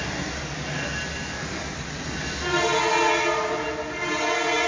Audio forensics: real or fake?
real